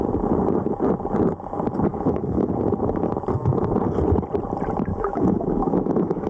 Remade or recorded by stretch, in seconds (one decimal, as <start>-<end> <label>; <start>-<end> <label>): 0.0-1.9 recorded; 1.9-2.5 remade; 2.5-4.9 recorded; 4.9-6.3 remade